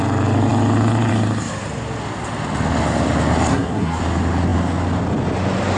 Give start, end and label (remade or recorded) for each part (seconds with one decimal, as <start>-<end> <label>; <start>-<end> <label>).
0.0-3.5 recorded; 3.5-4.0 remade; 4.0-5.8 recorded